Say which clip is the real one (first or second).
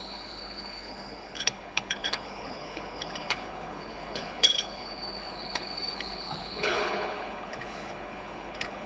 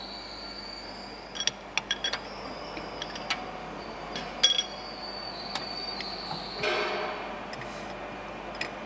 second